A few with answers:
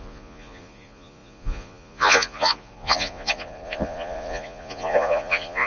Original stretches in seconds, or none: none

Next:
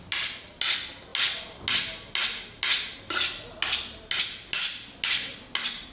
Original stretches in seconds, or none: 0.0-5.9

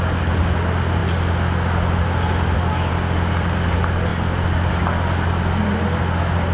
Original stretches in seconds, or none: 0.0-6.5

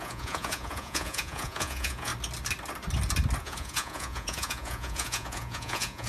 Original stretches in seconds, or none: 2.1-3.4

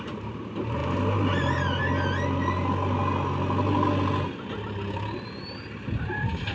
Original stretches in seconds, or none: 0.0-6.5

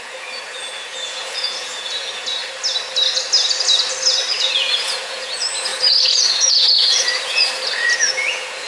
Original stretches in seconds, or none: 2.4-4.4

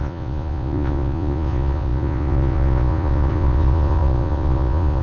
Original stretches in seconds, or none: none

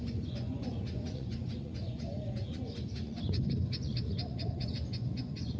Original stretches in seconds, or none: none